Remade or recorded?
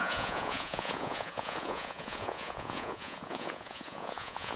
remade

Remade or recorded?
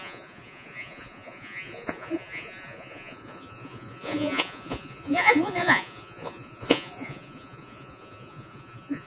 remade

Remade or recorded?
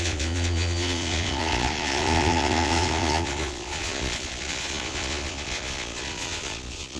remade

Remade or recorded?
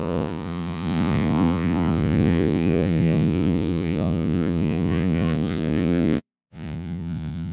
remade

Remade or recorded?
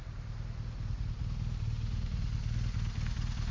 recorded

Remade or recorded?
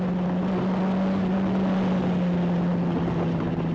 recorded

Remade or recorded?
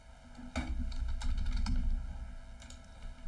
recorded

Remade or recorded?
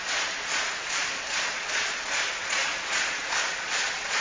remade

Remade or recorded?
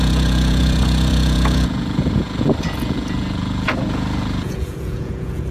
remade